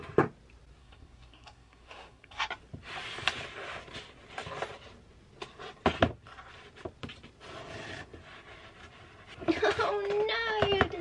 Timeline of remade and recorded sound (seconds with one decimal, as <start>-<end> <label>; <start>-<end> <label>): 0.0-0.8 recorded; 0.8-2.5 remade; 2.5-11.0 recorded